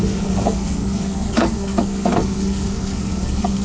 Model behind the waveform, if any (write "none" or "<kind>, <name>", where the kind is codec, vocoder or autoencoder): codec, SNAC